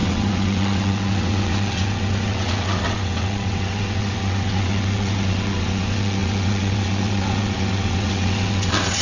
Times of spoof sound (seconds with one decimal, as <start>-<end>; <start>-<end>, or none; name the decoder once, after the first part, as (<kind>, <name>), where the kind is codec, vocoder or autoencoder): 0.0-9.0 (vocoder, WaveNeXt)